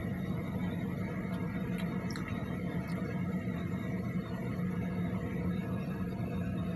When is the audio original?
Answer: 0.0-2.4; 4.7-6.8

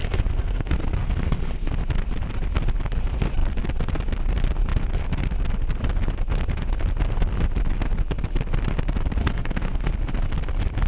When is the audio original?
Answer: 1.7-9.2; 9.9-10.9

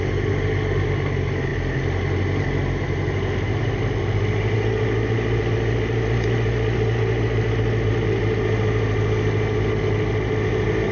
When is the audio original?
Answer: 0.0-10.9

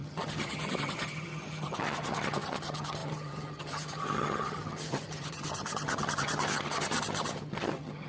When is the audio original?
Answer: none

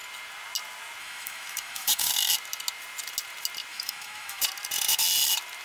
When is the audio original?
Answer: 0.0-1.0; 2.1-3.7; 4.4-5.6

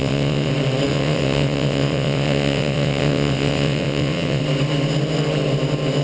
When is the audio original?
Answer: 0.5-0.9; 4.4-6.0

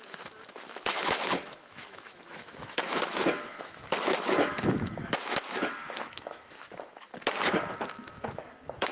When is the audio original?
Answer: 7.1-7.7

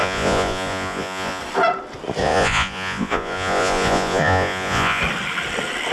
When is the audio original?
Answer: 1.4-2.2; 5.0-5.9